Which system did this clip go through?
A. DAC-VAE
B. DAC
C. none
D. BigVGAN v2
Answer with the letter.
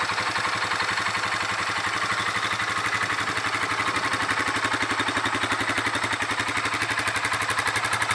D